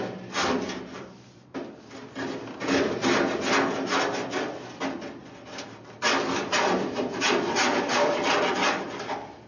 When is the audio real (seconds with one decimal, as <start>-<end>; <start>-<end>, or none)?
0.0-0.9; 1.4-5.2; 8.3-9.5